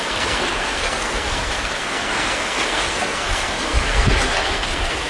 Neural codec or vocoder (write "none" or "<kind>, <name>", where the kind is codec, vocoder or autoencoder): codec, SNAC